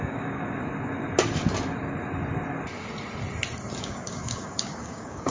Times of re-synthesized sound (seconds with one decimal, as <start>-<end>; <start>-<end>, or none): 0.0-0.6; 3.8-5.3

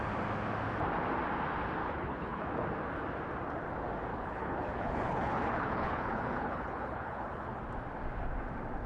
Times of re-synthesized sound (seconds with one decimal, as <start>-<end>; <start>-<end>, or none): 1.8-2.4; 4.1-7.6